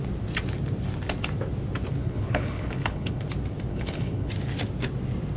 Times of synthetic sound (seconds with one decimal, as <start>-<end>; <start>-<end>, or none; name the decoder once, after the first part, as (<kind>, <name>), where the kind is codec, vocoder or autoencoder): 2.0-3.2 (codec, HILCodec); 3.7-4.3